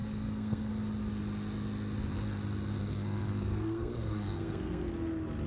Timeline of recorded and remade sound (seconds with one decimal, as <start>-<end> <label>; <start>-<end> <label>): 0.0-0.7 remade; 0.7-2.8 recorded; 2.8-4.9 remade; 4.9-5.5 recorded